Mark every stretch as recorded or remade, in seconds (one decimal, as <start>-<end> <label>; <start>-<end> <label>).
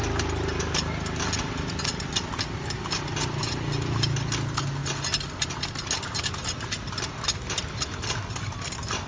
0.0-9.1 recorded